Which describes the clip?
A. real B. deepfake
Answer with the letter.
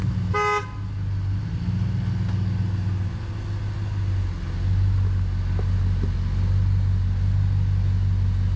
A